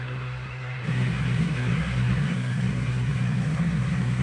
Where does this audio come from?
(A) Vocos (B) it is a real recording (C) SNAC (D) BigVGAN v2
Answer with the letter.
C